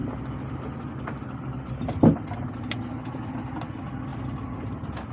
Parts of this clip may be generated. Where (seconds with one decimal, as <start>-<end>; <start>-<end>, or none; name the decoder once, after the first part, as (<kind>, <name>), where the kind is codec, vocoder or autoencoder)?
none